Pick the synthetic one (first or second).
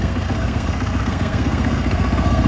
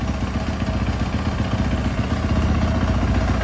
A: first